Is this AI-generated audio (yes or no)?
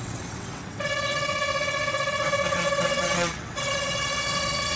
yes